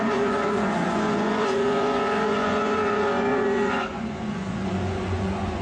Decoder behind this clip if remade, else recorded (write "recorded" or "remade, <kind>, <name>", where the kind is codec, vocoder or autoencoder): remade, vocoder, Vocos